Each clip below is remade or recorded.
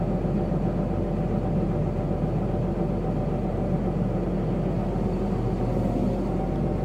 recorded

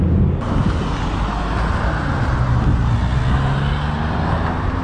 recorded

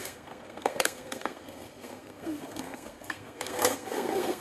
remade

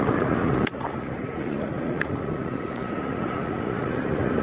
remade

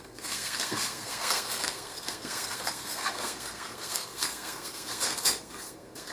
remade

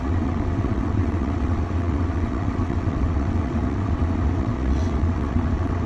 remade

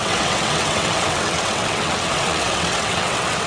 remade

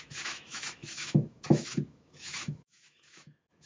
remade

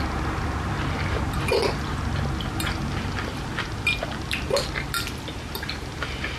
recorded